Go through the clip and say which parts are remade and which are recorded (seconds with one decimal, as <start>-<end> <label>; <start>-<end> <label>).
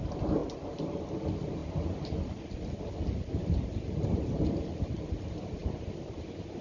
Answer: 0.0-6.6 recorded